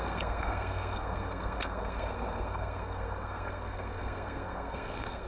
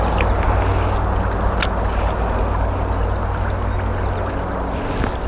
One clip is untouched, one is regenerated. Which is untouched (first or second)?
second